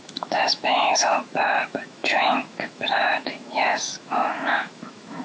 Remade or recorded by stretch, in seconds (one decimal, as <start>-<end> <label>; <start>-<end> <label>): 0.0-5.2 remade